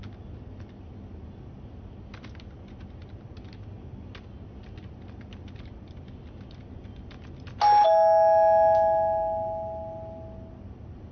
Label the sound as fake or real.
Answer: real